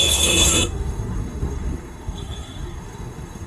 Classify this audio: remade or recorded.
remade